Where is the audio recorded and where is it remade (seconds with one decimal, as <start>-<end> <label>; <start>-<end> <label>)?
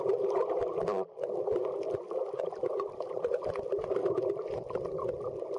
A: 0.0-5.6 recorded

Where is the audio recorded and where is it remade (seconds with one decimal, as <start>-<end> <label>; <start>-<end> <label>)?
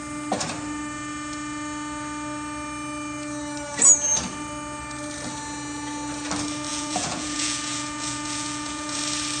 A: 0.0-6.7 recorded; 6.7-9.0 remade; 9.0-9.4 recorded